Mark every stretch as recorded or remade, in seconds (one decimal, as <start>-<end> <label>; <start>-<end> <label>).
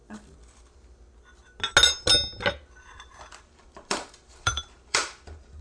0.0-3.4 recorded; 3.4-5.6 remade